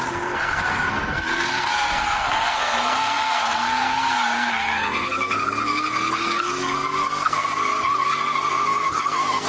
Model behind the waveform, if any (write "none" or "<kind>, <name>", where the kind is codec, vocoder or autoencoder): codec, SNAC